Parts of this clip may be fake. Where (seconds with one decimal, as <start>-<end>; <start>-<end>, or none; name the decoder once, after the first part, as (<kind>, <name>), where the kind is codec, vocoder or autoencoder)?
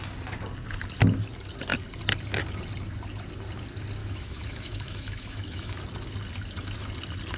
4.0-5.8 (autoencoder, DAC-VAE)